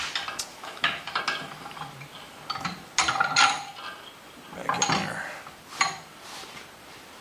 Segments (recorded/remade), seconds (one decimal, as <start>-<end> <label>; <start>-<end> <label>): 0.0-0.5 recorded; 0.5-1.2 remade; 1.2-7.2 recorded